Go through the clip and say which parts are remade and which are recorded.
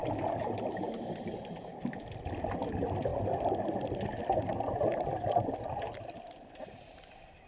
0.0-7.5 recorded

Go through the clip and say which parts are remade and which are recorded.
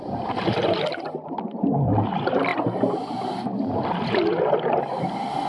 0.0-5.5 recorded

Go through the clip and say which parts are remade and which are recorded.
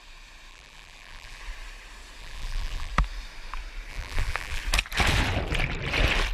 0.0-0.5 recorded; 0.5-1.4 remade; 1.4-2.2 recorded; 2.2-2.9 remade; 2.9-3.9 recorded; 3.9-4.6 remade; 4.6-6.3 recorded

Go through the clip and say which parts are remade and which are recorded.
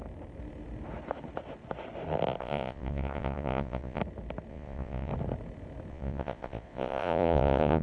0.0-2.4 recorded; 2.4-4.0 remade; 4.0-4.5 recorded; 4.5-5.1 remade; 5.1-5.9 recorded; 5.9-7.8 remade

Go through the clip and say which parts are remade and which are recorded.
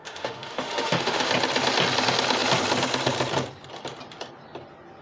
0.0-1.3 remade; 1.3-5.0 recorded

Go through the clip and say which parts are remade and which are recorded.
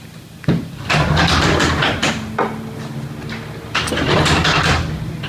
0.0-5.3 recorded